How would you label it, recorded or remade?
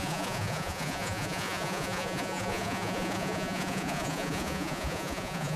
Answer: remade